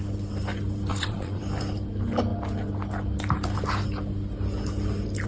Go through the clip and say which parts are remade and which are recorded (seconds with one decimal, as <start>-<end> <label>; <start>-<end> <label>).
0.0-0.9 recorded; 0.9-1.4 remade; 1.4-5.3 recorded